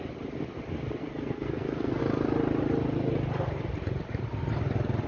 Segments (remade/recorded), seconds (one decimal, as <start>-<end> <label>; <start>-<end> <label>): 0.0-1.0 recorded; 1.0-2.0 remade; 2.0-5.1 recorded